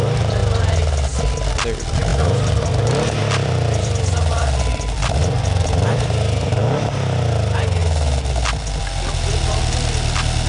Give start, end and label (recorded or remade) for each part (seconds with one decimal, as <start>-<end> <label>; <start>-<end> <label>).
0.0-0.4 recorded; 0.4-1.2 remade; 1.2-3.2 recorded; 3.2-5.9 remade; 5.9-10.5 recorded